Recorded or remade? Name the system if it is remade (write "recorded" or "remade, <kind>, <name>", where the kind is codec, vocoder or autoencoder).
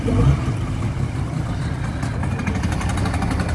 recorded